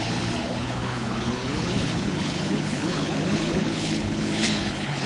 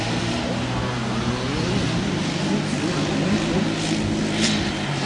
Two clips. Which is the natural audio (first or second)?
second